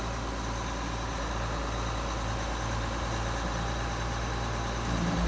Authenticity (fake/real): real